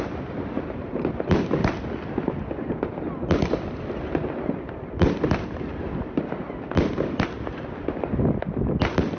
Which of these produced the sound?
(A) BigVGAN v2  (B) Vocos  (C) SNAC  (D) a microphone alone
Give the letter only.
D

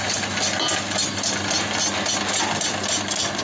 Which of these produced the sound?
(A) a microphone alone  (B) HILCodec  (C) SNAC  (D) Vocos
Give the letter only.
A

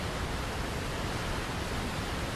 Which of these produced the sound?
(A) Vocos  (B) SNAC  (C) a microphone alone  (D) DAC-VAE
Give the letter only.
C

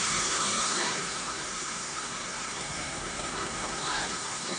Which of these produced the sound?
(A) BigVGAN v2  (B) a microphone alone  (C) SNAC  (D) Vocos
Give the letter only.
C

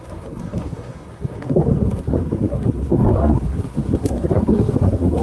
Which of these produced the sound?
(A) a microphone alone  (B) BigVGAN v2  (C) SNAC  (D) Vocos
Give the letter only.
C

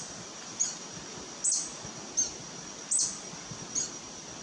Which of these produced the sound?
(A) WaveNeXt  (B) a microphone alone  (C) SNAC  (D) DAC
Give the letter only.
B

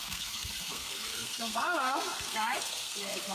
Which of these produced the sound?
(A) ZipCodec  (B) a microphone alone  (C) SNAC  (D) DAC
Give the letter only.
C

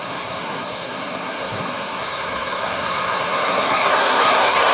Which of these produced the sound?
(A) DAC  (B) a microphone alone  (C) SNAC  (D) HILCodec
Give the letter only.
C